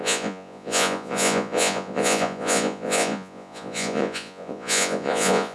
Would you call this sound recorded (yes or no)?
no